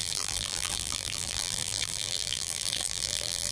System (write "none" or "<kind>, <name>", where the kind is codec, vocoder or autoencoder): vocoder, BigVGAN v2